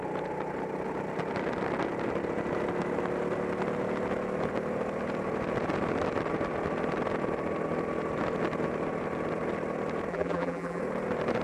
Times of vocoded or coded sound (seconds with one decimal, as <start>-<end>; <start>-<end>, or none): 10.1-10.8